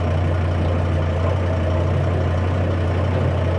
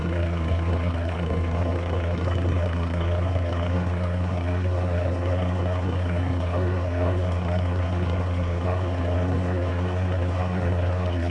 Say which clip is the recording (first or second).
first